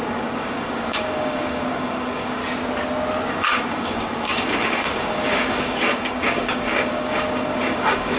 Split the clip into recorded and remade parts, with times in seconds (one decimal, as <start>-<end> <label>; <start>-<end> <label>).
0.0-2.4 remade; 2.4-3.3 recorded; 3.3-8.2 remade